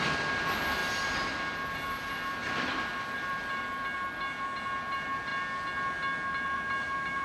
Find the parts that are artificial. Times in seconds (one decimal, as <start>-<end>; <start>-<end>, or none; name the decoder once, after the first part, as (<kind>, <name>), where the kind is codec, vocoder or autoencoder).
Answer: 0.0-0.8 (vocoder, BigVGAN v2); 2.1-5.3; 6.3-7.2